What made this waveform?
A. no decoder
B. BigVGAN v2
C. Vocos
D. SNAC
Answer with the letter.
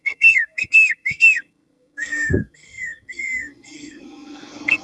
D